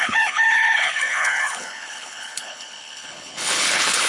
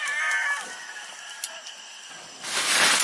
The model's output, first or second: first